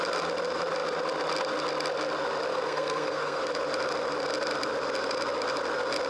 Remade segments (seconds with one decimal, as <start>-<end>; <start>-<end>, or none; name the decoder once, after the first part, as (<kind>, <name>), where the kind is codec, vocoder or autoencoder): 2.5-3.4 (codec, SNAC)